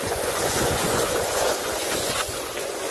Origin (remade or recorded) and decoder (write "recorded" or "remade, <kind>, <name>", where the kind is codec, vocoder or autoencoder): remade, vocoder, Vocos